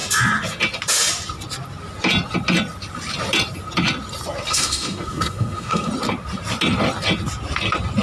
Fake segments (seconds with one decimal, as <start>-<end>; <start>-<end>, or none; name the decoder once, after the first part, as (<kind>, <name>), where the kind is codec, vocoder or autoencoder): 4.5-5.9 (codec, SNAC)